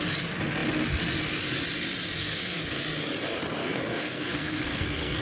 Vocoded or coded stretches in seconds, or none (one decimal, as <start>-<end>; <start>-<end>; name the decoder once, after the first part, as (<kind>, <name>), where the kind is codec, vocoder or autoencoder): 2.2-2.8 (codec, SNAC); 3.6-5.2